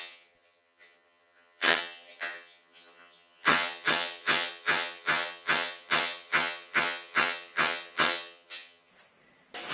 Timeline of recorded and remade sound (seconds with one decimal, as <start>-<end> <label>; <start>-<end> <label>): 0.0-8.9 remade; 8.9-9.7 recorded

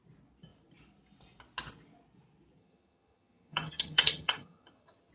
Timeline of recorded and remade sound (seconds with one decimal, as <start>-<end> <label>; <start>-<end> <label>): 0.0-2.6 recorded; 2.6-5.1 remade

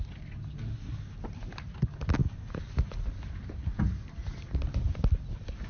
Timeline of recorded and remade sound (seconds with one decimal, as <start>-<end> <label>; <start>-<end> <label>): 0.0-5.7 recorded

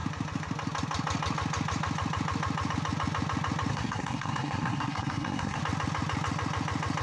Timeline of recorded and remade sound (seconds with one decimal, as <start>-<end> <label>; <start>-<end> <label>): 0.0-3.7 recorded; 3.7-5.6 remade; 5.6-7.0 recorded

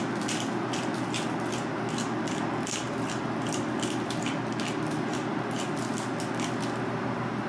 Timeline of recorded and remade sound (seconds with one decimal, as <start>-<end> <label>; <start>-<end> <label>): 0.0-7.5 recorded